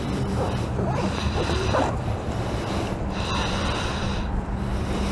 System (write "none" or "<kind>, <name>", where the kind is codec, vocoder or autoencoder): vocoder, BigVGAN v2